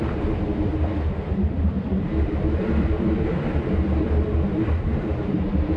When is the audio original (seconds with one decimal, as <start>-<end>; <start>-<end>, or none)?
0.7-2.0